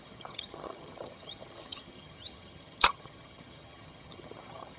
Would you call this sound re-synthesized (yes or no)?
yes